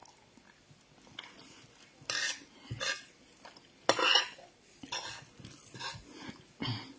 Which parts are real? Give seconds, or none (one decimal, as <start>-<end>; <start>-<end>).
0.0-7.0